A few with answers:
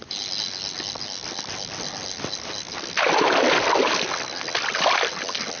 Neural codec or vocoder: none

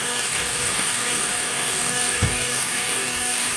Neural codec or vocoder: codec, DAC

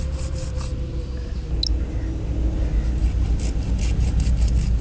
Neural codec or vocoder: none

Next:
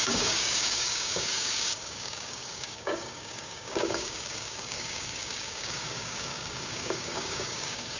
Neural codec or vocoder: codec, DAC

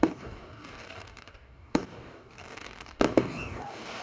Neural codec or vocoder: codec, DAC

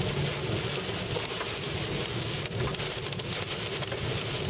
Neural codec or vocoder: none